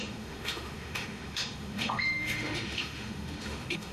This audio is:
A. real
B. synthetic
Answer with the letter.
B